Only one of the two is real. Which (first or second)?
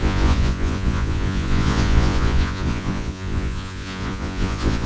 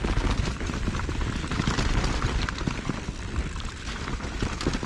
second